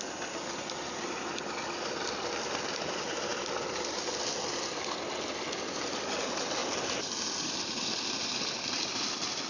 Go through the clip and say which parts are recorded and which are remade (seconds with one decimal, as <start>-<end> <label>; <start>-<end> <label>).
0.0-9.5 recorded